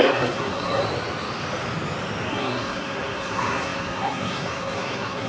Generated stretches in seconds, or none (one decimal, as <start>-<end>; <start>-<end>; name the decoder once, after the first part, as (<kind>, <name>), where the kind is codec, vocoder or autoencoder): 0.0-0.8 (codec, SNAC); 2.3-5.3